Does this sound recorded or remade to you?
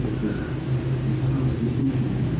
recorded